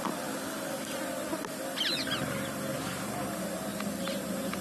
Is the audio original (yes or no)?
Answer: yes